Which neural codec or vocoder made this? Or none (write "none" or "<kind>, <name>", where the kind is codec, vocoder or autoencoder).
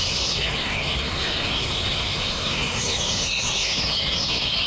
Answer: codec, SNAC